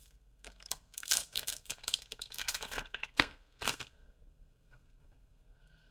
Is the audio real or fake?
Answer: fake